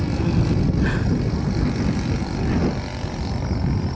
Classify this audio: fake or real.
real